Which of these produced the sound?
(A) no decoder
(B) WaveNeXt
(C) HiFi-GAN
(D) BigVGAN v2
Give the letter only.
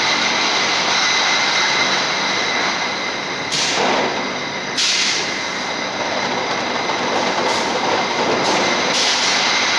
A